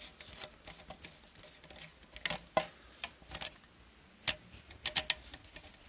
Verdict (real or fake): real